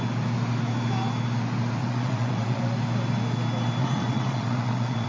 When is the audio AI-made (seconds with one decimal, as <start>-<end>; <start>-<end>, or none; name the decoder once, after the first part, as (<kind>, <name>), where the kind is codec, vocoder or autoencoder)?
1.8-2.6 (vocoder, WaveNeXt); 3.8-5.1